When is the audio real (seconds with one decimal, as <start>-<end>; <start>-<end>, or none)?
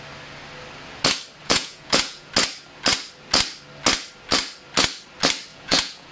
0.0-1.4; 2.3-5.5